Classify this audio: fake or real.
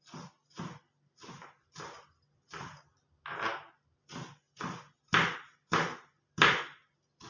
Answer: real